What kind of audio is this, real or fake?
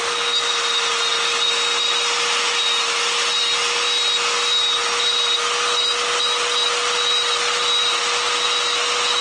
real